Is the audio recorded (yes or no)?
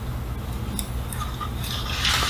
yes